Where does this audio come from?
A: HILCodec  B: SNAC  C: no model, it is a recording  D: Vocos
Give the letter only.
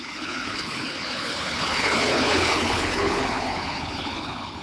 A